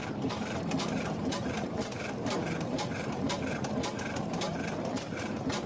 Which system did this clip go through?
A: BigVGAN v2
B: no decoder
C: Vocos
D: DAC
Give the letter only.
A